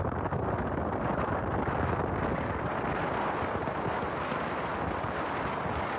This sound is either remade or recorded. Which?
recorded